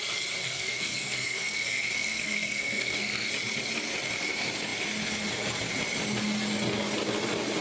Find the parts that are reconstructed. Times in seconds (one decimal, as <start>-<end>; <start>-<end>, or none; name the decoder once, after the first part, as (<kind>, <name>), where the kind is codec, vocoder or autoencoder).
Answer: 0.4-3.3 (codec, SNAC)